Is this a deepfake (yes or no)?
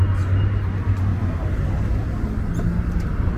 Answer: no